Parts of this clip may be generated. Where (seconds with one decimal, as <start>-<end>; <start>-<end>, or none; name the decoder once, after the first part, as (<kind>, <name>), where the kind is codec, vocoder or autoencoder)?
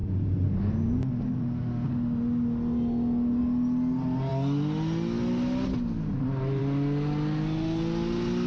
none